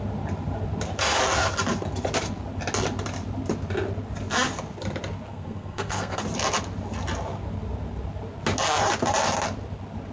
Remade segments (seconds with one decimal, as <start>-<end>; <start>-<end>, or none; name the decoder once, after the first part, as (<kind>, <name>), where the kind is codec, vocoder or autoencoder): 5.3-6.2 (codec, SNAC)